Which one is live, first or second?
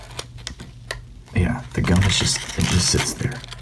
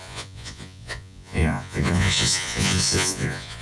first